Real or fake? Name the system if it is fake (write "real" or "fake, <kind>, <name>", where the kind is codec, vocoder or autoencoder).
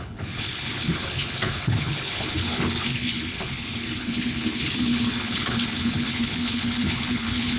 fake, codec, HILCodec